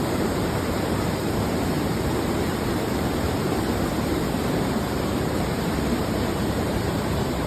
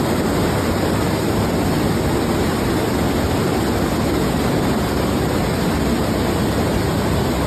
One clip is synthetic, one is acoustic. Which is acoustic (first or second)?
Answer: second